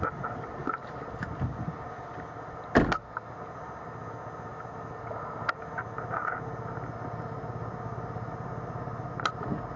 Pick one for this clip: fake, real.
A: real